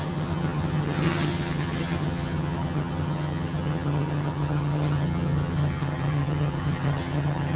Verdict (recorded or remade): remade